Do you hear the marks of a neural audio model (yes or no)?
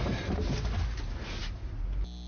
no